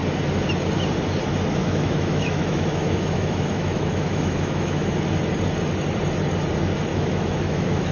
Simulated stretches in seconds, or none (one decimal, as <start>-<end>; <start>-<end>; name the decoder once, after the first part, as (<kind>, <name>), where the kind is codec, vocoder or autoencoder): 1.6-4.9 (autoencoder, DAC-VAE); 6.9-7.9